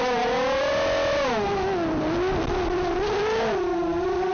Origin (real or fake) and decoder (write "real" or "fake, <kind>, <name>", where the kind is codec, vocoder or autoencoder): real